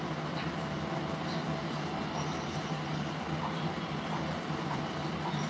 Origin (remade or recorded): recorded